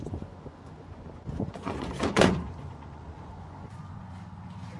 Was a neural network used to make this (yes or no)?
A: yes